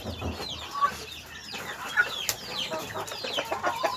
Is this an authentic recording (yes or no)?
yes